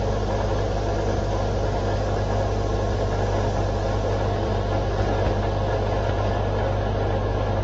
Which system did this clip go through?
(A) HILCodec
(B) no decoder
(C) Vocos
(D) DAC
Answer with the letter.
B